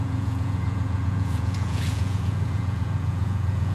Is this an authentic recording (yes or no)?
no